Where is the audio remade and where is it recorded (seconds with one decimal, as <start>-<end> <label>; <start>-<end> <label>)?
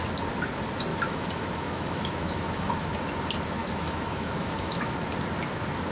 0.0-0.9 recorded; 0.9-2.9 remade; 2.9-3.6 recorded; 3.6-4.9 remade; 4.9-5.9 recorded